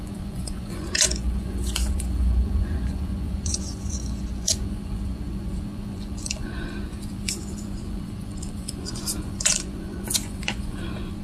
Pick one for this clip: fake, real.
fake